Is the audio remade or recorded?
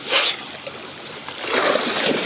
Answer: recorded